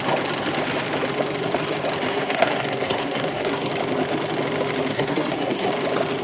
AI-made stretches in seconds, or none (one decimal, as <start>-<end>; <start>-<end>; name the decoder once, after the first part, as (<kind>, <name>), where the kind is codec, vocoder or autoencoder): 2.1-3.7 (codec, SNAC); 4.9-5.7